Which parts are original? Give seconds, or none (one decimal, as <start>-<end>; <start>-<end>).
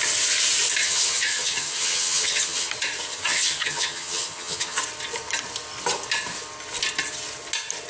0.0-0.8; 2.7-3.1; 4.8-7.9